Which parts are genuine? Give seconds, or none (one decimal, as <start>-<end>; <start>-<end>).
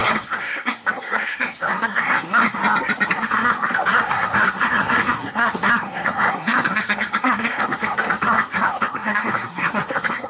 2.6-3.1